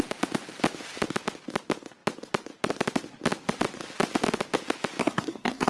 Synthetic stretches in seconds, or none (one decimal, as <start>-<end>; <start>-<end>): 5.0-5.7